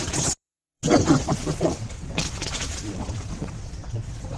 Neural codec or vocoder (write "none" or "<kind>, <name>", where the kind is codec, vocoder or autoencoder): vocoder, WaveNeXt